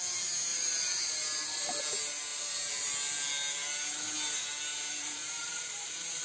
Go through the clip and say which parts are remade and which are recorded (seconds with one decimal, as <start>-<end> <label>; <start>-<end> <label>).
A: 0.0-0.5 recorded; 0.5-1.8 remade; 1.8-2.3 recorded; 2.3-2.9 remade; 2.9-4.7 recorded; 4.7-6.2 remade